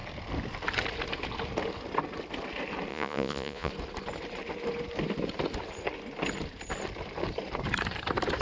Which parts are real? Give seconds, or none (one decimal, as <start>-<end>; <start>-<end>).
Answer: 0.0-2.9; 3.7-8.4